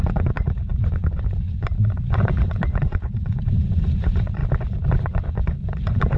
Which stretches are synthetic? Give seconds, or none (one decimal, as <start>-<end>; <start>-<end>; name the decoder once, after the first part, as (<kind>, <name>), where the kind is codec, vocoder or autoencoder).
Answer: 0.0-4.4 (vocoder, Vocos); 4.9-6.2